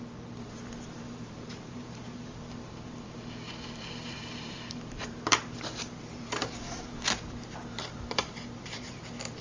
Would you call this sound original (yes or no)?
no